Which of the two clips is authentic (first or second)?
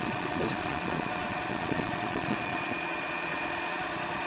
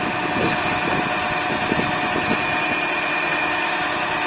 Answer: second